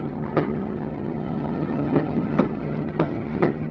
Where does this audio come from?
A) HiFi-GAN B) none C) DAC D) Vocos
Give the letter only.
A